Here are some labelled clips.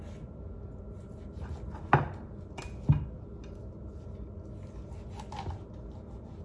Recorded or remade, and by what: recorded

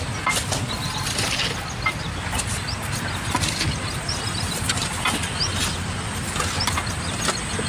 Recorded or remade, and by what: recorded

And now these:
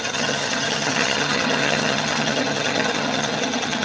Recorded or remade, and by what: remade, vocoder, HiFi-GAN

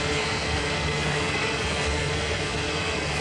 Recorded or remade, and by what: remade, codec, SNAC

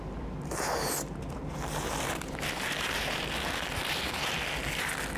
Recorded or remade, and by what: recorded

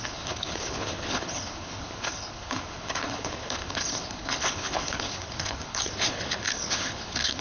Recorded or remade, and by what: remade, codec, HILCodec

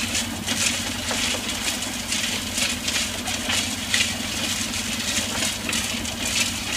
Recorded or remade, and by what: recorded